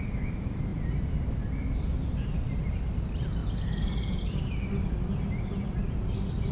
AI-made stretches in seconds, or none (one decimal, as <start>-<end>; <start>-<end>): 3.4-4.2